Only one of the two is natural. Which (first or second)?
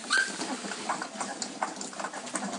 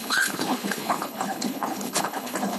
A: first